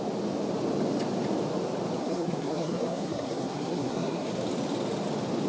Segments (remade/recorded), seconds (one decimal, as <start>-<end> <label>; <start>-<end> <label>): 0.0-2.0 recorded; 2.0-4.3 remade; 4.3-5.5 recorded